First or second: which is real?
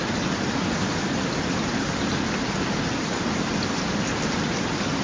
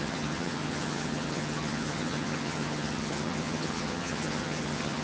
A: first